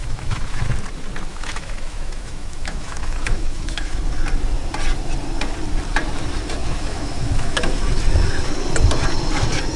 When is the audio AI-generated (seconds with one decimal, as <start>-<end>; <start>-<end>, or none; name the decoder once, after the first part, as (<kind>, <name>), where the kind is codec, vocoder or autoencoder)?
0.0-0.7 (autoencoder, DAC-VAE); 1.3-4.0; 6.6-7.6

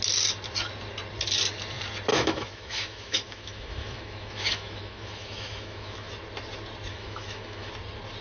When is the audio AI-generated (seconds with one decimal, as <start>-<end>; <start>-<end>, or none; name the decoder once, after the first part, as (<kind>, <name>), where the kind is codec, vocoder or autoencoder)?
2.1-6.1 (autoencoder, DAC-VAE); 6.9-7.7

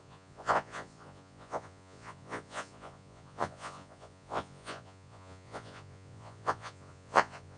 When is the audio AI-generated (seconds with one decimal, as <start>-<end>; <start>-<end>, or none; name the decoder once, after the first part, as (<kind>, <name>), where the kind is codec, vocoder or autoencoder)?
0.0-7.6 (vocoder, Vocos)

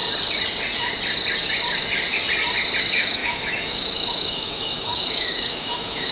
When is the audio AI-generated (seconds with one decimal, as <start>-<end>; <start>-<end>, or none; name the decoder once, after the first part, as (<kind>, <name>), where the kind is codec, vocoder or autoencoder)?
2.8-6.1 (autoencoder, DAC-VAE)

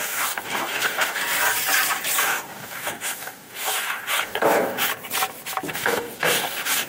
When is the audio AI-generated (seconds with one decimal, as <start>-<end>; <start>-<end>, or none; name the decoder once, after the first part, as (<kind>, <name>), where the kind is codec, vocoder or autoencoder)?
0.0-1.2 (codec, DAC); 2.2-4.9; 5.7-6.9

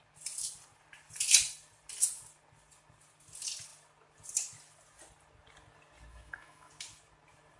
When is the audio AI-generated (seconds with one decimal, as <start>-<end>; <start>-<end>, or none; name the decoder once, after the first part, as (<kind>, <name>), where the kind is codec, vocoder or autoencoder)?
6.1-6.7 (autoencoder, DAC-VAE)

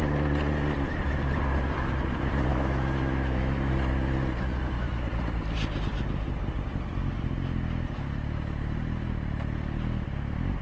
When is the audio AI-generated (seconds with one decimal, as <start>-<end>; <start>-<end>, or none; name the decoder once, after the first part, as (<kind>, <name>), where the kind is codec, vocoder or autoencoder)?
2.5-3.7 (autoencoder, DAC-VAE)

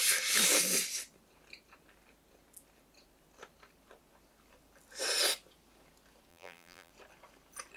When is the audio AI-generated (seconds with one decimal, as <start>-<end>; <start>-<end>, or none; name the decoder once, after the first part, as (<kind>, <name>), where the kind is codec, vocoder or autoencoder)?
6.3-6.9 (vocoder, BigVGAN v2)